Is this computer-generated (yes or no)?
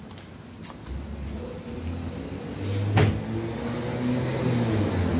no